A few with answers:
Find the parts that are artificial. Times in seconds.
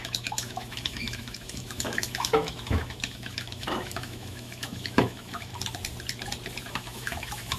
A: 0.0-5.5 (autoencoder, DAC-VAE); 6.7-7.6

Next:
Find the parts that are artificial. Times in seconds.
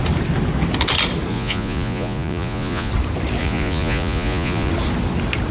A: 1.3-2.9 (vocoder, Vocos); 3.4-4.7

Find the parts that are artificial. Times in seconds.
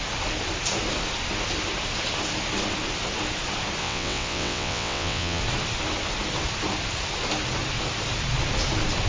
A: 3.8-5.4 (vocoder, WaveNeXt)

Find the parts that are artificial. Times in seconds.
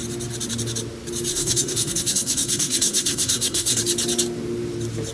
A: 1.3-3.8 (codec, SNAC)